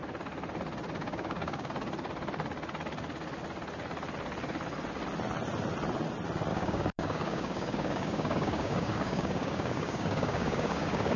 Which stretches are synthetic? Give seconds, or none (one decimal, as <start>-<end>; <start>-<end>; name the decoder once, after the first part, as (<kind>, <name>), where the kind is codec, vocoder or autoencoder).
1.0-1.7 (codec, DAC); 6.5-11.2